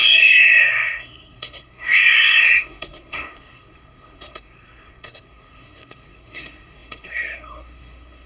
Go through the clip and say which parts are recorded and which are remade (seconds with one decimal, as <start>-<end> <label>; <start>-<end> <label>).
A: 0.0-8.3 remade